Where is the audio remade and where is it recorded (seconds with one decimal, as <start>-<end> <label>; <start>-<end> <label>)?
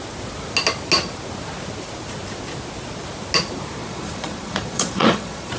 0.0-3.8 recorded; 3.8-5.6 remade